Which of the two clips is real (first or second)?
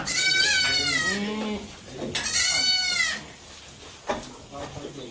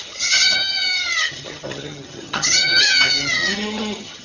first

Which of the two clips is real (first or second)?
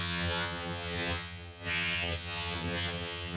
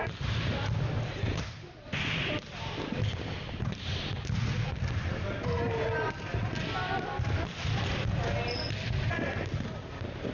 second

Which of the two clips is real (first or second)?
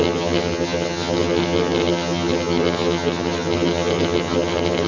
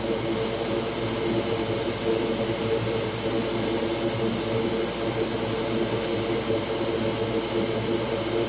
second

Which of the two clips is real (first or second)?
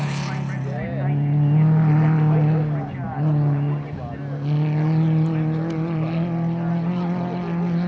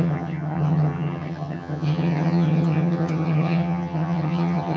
first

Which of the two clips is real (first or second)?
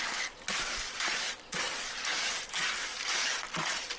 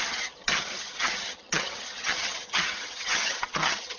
first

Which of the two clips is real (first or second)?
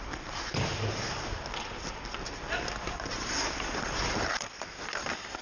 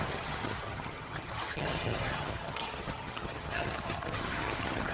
first